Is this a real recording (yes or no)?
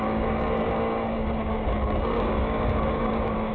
no